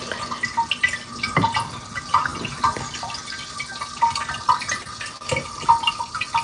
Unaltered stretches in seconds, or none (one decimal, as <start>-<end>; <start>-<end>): 0.0-6.4